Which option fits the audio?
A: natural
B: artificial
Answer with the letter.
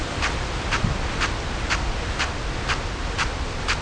A